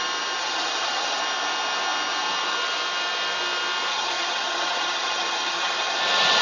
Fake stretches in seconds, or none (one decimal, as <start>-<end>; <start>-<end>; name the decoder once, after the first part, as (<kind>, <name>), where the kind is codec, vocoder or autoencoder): 0.4-1.2 (vocoder, HiFi-GAN); 3.9-6.0